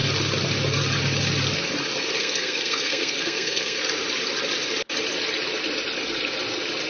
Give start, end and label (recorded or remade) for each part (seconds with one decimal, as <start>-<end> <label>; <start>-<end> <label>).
0.0-2.2 recorded; 2.2-3.8 remade; 3.8-6.9 recorded